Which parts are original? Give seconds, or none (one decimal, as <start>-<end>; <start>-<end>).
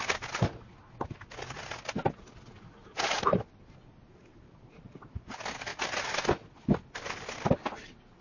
0.0-8.2